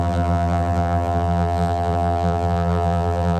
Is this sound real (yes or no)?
no